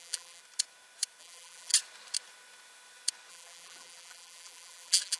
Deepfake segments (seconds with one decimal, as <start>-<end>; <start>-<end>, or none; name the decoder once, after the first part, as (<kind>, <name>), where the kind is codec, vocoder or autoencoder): 0.0-0.4 (vocoder, BigVGAN v2); 1.2-1.7; 3.3-5.2